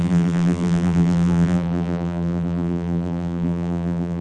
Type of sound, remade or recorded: remade